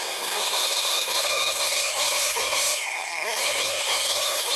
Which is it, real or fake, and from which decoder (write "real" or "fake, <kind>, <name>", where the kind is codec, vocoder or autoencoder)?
fake, codec, SNAC